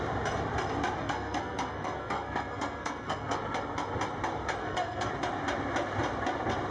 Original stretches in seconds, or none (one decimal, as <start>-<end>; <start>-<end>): 0.0-1.0; 3.4-4.6; 5.1-6.7